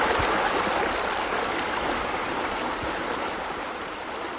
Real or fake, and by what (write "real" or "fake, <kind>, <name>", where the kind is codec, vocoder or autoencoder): real